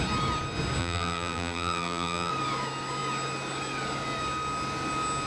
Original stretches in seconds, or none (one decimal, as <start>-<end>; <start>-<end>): 0.0-0.8; 2.3-5.3